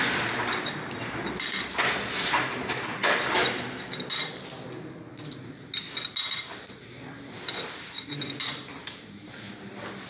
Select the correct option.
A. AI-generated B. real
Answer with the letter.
B